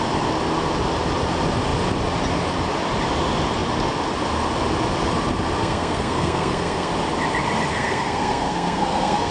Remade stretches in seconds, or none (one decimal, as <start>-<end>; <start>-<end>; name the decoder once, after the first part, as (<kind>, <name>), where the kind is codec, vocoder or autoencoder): 5.6-6.9 (codec, SNAC); 7.7-9.3